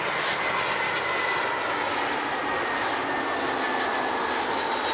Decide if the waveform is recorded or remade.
recorded